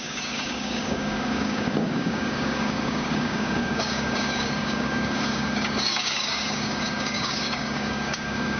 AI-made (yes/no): yes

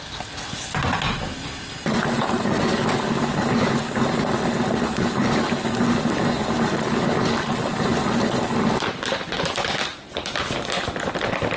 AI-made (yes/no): no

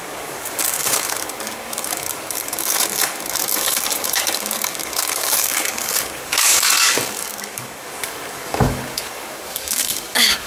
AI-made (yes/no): yes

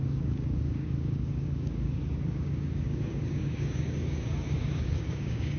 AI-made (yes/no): yes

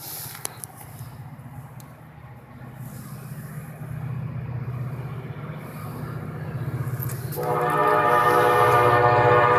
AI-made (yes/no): no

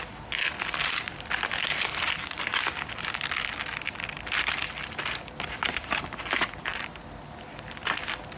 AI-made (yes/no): no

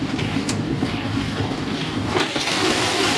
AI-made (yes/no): yes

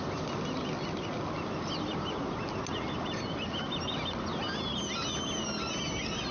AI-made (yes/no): no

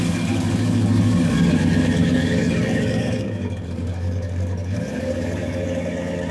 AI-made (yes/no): yes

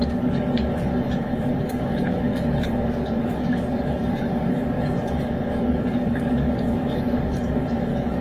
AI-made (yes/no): yes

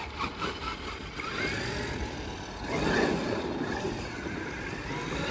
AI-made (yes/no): no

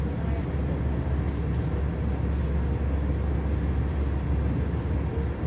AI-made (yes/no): no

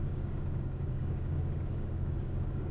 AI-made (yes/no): yes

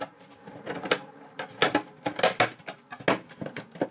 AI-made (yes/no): no